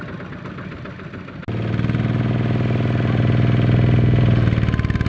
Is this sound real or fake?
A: real